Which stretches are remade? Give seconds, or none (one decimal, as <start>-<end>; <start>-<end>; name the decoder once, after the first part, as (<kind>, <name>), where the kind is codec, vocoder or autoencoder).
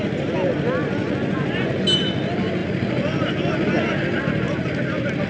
1.0-1.8 (vocoder, Vocos)